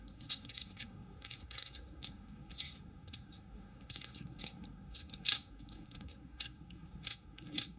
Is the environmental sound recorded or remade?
remade